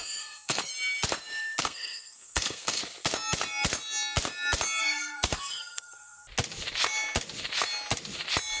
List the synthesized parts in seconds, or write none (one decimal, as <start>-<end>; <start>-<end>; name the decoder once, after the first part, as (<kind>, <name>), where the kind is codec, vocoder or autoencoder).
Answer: 0.0-0.7 (codec, SNAC); 1.6-2.8; 4.8-6.2